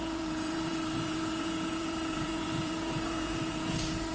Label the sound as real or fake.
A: fake